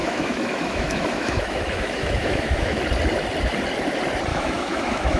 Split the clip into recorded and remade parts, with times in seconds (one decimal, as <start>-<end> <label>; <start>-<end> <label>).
0.0-2.8 remade; 2.8-4.3 recorded; 4.3-5.2 remade